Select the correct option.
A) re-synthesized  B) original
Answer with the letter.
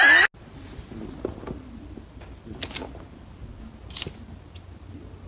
B